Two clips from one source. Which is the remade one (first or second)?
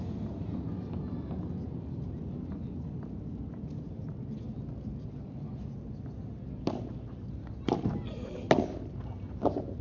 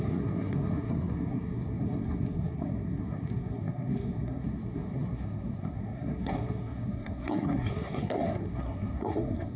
second